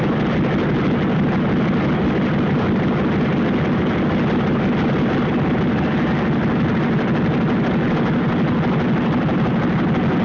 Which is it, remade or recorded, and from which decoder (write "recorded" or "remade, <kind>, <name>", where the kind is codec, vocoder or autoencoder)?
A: recorded